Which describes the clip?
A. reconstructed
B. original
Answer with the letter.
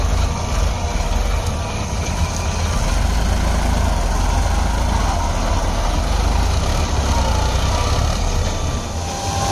B